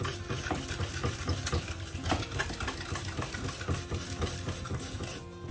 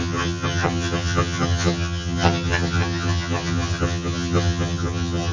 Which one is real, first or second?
first